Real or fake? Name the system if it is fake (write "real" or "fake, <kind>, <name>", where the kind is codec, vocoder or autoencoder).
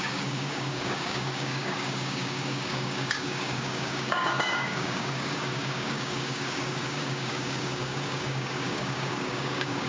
fake, codec, DAC